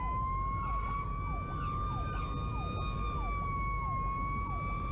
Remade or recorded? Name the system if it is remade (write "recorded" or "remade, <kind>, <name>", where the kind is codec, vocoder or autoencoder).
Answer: recorded